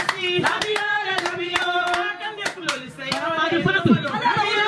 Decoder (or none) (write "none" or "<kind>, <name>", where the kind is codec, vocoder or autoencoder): vocoder, BigVGAN v2